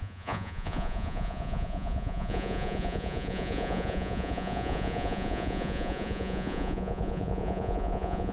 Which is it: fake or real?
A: fake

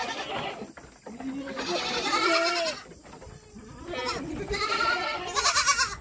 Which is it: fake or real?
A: real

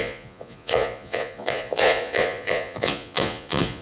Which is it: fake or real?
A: fake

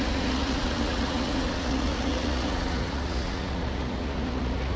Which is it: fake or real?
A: fake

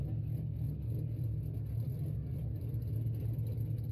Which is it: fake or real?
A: real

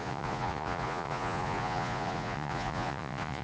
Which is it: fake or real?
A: fake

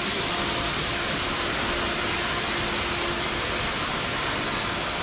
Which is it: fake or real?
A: real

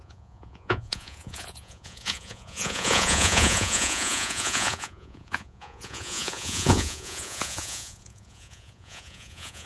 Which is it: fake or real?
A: fake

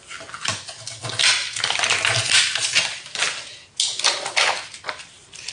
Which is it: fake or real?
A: real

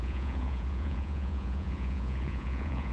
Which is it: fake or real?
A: fake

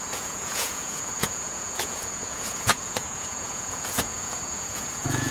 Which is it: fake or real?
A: fake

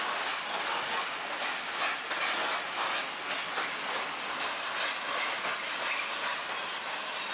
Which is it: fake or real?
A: real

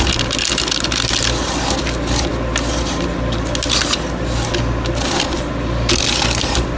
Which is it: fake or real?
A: real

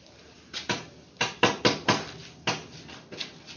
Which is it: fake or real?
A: real